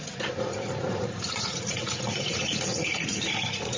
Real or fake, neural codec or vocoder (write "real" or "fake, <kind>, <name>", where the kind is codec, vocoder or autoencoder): fake, vocoder, Vocos